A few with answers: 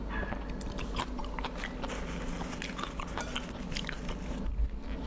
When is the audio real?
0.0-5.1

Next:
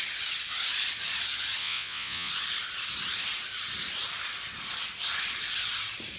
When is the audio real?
0.0-1.6; 2.3-6.2

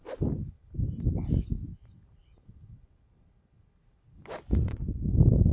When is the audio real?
0.0-5.5

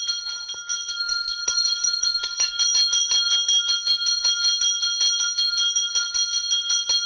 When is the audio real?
0.0-0.9; 2.6-7.1

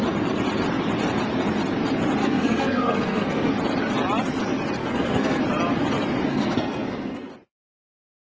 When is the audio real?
0.0-2.2; 3.5-4.8; 5.4-6.3; 7.3-8.3